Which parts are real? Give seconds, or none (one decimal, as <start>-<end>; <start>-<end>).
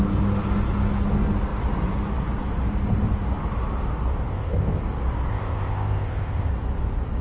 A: 0.0-4.3; 4.8-5.3; 6.5-7.2